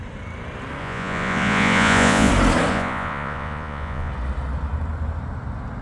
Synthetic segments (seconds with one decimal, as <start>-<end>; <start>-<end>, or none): 0.8-2.3; 2.7-4.1